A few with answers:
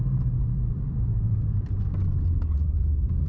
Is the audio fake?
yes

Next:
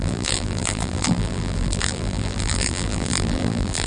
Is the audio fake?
yes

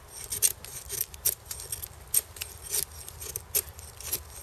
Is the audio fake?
no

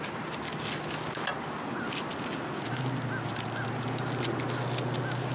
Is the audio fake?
no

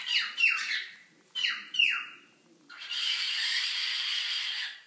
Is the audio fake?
yes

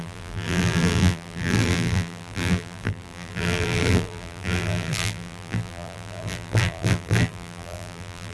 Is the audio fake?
yes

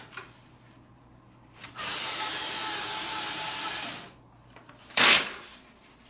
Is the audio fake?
yes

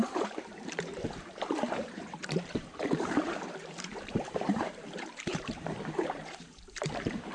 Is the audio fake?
yes